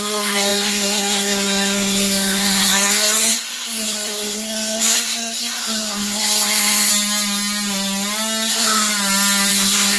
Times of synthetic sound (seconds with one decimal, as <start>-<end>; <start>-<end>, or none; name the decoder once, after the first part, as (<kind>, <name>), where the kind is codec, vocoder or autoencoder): 0.0-6.9 (codec, SNAC); 8.5-8.9; 9.5-10.0